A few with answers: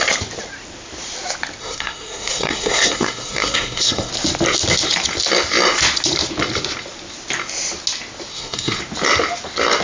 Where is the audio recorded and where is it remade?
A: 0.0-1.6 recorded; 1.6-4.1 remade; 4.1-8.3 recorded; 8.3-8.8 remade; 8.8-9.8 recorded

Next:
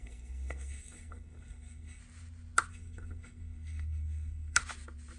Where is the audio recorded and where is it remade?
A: 0.0-2.0 remade; 2.0-2.7 recorded; 2.7-4.6 remade; 4.6-5.2 recorded